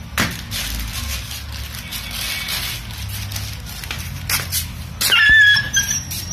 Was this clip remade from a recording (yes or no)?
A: no